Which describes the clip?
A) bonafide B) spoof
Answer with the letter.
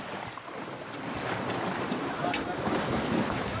B